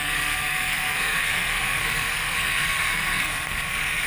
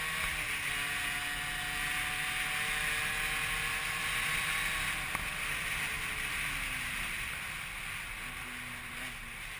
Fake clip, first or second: first